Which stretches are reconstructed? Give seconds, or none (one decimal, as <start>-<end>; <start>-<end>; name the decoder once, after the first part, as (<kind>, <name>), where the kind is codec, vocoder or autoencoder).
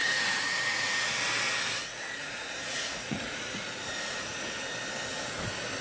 0.0-1.1 (vocoder, Vocos); 2.2-4.5